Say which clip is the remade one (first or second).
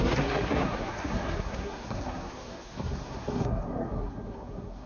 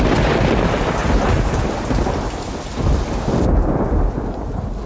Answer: first